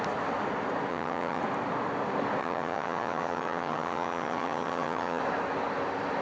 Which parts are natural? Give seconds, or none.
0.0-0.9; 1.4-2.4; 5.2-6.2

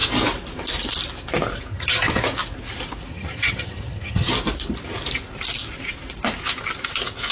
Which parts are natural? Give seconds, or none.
0.0-1.7; 2.2-3.1; 4.3-7.3

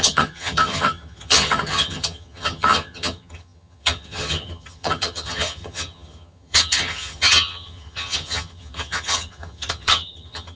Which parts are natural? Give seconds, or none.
none

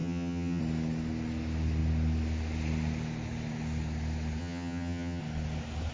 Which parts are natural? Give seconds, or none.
0.6-4.4; 5.2-5.9